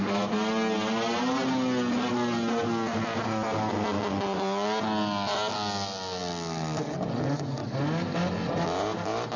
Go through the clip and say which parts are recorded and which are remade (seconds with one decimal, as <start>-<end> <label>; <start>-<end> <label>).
0.0-9.4 recorded